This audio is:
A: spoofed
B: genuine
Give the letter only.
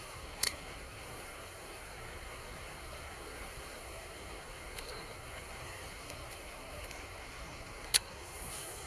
A